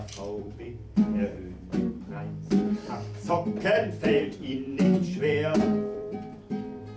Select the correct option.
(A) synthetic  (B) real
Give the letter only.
A